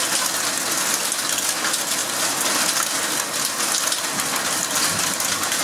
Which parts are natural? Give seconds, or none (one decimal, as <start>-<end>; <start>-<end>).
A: 0.0-5.6